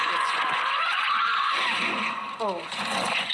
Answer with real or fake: fake